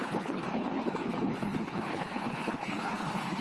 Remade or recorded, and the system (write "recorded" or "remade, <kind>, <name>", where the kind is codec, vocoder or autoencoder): remade, codec, HILCodec